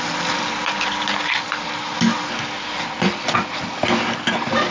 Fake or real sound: real